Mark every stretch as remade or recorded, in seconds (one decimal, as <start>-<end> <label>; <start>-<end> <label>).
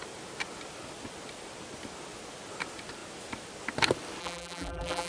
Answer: 0.0-4.2 recorded; 4.2-5.1 remade